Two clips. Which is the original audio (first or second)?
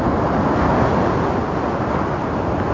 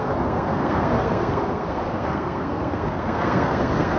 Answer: first